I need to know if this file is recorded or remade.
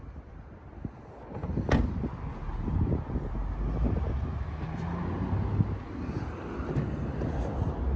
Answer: recorded